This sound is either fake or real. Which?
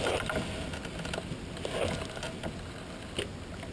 real